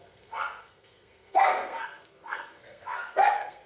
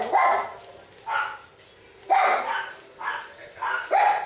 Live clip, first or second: second